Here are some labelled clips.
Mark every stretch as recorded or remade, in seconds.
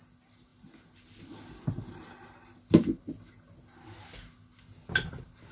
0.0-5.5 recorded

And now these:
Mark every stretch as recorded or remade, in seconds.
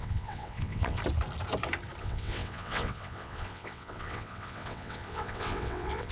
0.0-1.0 remade; 1.0-2.0 recorded; 2.0-6.1 remade